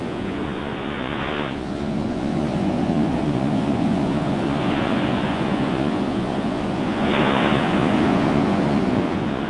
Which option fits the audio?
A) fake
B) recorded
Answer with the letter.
A